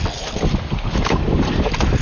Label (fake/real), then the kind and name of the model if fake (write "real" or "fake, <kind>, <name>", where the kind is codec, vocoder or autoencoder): real